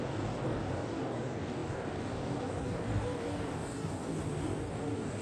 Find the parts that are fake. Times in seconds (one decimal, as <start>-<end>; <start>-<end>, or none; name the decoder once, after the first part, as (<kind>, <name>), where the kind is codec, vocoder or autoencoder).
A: 0.0-4.2 (codec, DAC); 4.7-5.2